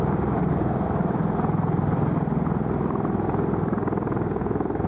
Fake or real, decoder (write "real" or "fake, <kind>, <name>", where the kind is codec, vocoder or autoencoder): fake, vocoder, BigVGAN v2